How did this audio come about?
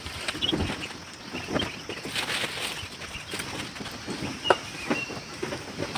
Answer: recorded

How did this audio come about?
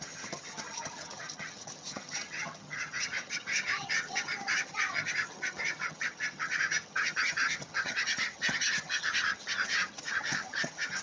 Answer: remade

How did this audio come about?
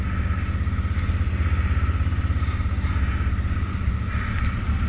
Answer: recorded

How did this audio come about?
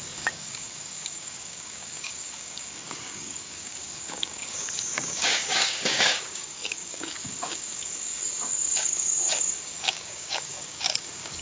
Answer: remade